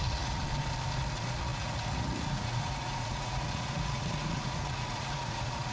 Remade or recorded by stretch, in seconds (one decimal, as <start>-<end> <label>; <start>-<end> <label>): 0.0-0.4 remade; 0.4-1.1 recorded; 1.1-5.7 remade